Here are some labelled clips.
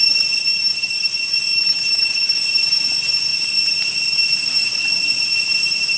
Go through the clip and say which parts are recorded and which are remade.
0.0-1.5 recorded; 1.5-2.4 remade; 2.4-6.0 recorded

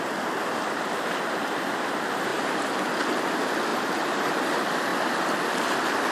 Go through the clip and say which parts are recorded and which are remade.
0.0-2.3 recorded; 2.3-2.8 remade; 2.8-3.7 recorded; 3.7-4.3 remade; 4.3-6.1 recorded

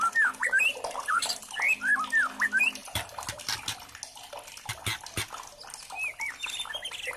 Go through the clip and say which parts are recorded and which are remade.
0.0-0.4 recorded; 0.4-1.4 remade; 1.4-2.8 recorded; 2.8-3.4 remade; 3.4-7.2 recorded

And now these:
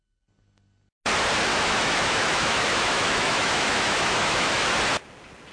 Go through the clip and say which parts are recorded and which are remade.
0.0-1.5 recorded; 1.5-4.8 remade; 4.8-5.5 recorded

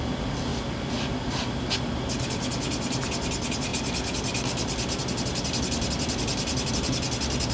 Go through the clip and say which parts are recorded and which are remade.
0.0-7.5 recorded

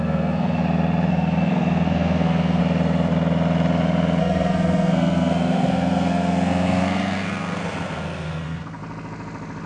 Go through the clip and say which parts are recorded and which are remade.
0.0-0.6 remade; 0.6-1.1 recorded; 1.1-2.6 remade; 2.6-4.2 recorded; 4.2-8.8 remade; 8.8-9.7 recorded

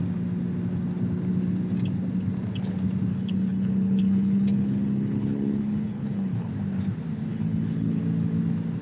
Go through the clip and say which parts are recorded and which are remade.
0.0-3.1 recorded; 3.1-6.5 remade; 6.5-7.3 recorded; 7.3-8.0 remade; 8.0-8.8 recorded

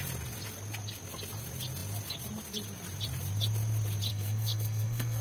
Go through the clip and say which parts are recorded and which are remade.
0.0-4.1 recorded; 4.1-5.2 remade